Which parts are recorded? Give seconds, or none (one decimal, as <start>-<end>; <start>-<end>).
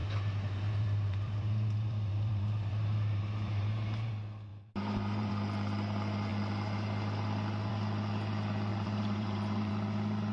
4.1-4.5; 5.3-8.7; 9.7-10.3